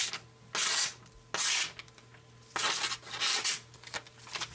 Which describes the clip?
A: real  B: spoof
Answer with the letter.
A